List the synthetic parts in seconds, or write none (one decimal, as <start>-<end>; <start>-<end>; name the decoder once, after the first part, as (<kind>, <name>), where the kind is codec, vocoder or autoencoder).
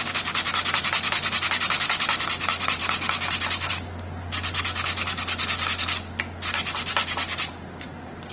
none